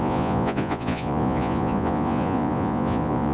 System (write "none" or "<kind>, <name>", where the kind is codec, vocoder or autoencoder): vocoder, Vocos